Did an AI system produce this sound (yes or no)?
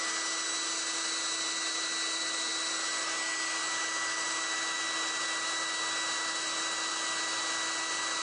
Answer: no